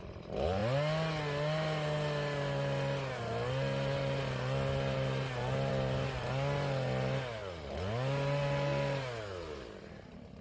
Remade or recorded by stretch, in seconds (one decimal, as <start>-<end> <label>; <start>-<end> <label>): 0.0-10.4 recorded